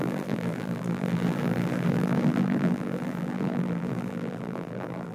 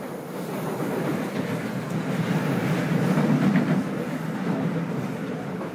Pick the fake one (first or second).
first